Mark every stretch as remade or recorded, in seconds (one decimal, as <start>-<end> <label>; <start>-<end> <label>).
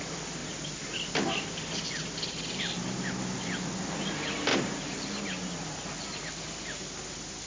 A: 0.0-7.5 recorded